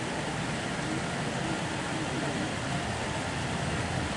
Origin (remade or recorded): recorded